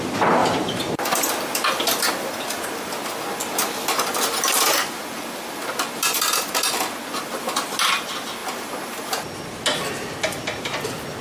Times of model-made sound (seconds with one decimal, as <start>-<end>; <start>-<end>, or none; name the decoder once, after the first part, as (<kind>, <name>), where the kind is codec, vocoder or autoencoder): 0.4-0.9 (vocoder, BigVGAN v2)